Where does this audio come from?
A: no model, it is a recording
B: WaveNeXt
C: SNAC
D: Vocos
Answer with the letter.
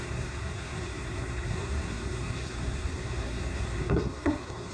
C